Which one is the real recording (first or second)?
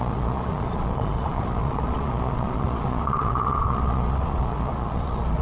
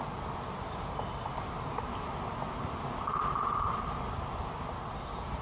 second